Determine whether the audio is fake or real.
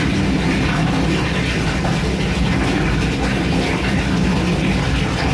real